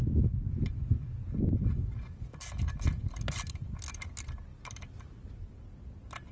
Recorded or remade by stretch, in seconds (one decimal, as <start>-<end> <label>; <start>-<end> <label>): 0.0-6.3 recorded